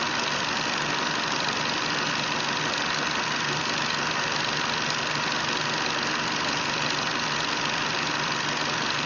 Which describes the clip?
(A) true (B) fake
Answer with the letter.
A